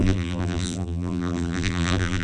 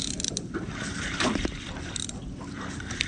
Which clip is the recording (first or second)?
second